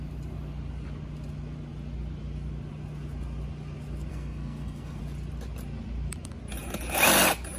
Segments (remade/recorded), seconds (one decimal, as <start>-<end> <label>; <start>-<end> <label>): 0.0-4.1 recorded; 4.1-5.0 remade; 5.0-7.6 recorded